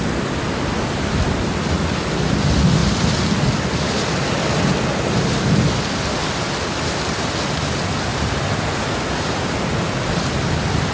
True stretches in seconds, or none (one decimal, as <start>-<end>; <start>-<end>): 0.0-10.9